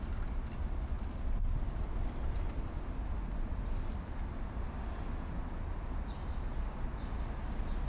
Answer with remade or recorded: recorded